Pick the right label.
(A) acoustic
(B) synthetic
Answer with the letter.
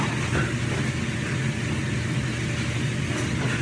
A